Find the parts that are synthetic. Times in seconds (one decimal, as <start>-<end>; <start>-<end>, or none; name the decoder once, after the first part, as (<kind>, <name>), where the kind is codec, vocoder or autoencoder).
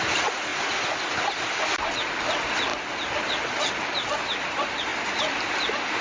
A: none